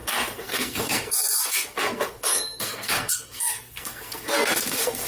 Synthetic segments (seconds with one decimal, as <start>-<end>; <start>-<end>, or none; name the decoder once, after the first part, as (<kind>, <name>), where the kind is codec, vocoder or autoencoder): 0.0-5.1 (codec, SNAC)